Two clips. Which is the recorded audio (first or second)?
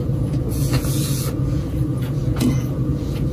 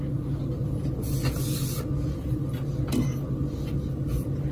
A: second